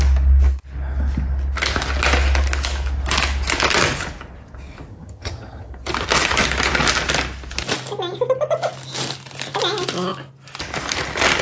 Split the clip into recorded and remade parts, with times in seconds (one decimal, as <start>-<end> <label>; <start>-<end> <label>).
0.0-4.9 recorded; 4.9-5.7 remade; 5.7-11.4 recorded